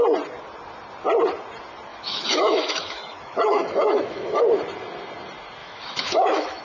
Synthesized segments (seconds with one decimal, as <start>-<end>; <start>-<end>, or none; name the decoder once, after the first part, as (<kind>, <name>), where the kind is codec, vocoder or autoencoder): 1.9-4.4 (autoencoder, DAC-VAE); 5.6-6.6